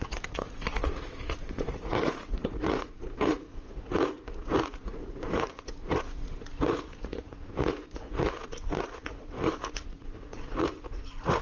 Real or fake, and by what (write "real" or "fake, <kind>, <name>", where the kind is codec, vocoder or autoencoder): fake, vocoder, Vocos